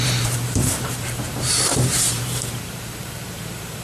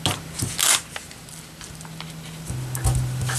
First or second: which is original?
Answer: second